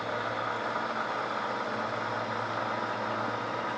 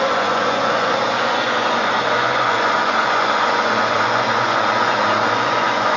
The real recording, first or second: first